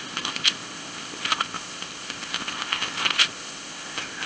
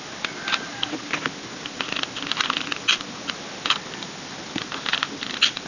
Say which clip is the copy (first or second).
first